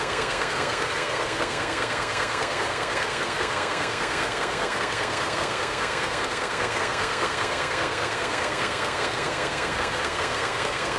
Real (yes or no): no